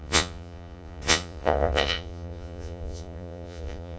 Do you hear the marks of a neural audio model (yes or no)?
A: yes